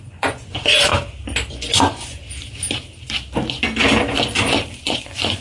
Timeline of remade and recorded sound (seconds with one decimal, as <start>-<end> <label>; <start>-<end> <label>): 0.0-0.9 remade; 0.9-1.5 recorded; 1.5-2.2 remade; 2.2-4.8 recorded; 4.8-5.4 remade